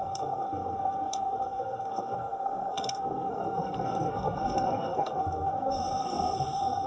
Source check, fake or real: fake